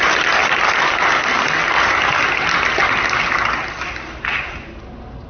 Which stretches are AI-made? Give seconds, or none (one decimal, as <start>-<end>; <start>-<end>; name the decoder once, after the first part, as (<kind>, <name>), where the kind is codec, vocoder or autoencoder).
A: none